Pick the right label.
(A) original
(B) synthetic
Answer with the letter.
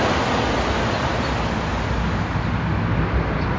A